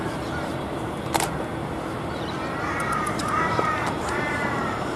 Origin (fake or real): fake